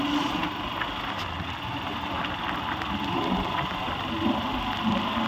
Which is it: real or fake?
real